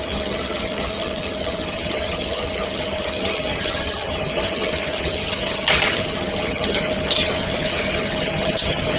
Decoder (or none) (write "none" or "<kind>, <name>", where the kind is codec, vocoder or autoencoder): vocoder, HiFi-GAN